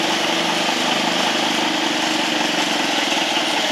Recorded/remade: recorded